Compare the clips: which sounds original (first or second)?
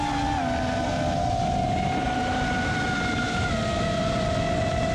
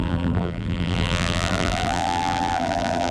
first